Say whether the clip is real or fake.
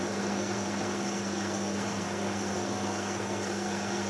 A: fake